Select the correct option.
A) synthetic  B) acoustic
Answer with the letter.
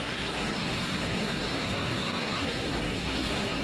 A